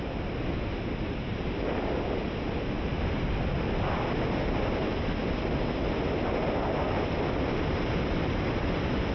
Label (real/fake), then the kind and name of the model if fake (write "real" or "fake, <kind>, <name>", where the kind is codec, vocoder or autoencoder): real